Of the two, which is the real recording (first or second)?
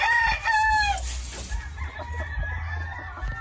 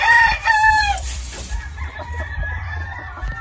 first